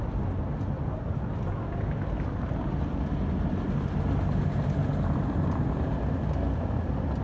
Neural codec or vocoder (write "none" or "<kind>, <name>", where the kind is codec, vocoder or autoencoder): none